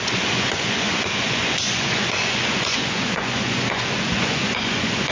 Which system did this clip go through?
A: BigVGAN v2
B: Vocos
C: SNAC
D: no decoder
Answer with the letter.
B